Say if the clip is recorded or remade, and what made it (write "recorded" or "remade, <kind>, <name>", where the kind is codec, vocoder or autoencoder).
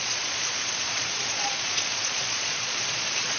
remade, vocoder, Vocos